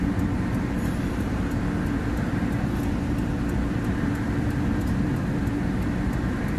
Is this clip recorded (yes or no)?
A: yes